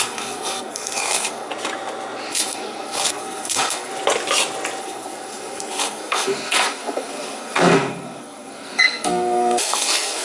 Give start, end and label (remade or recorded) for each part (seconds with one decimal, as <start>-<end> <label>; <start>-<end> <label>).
0.0-1.5 remade; 1.5-2.3 recorded; 2.3-3.9 remade; 3.9-4.8 recorded; 4.8-10.2 remade